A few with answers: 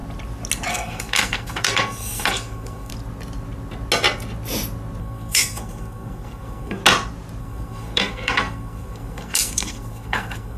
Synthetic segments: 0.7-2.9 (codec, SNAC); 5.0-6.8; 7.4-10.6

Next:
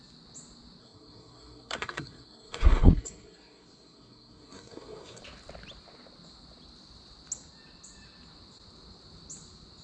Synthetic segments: 0.8-5.2 (codec, SNAC)

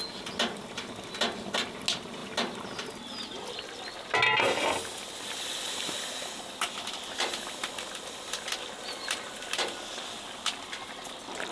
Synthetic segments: none

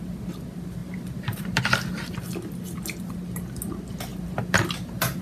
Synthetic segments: 0.8-1.6 (vocoder, BigVGAN v2); 4.1-5.2